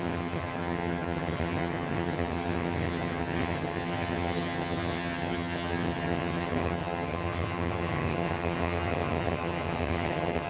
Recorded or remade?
remade